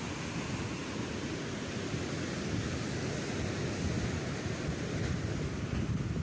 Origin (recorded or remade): recorded